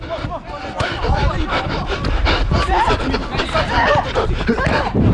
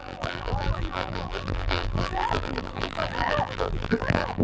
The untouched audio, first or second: first